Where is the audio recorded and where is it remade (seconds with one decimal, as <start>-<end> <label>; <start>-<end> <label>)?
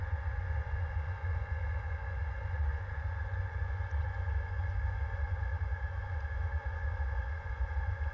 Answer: 0.0-5.5 remade; 5.5-6.0 recorded; 6.0-8.1 remade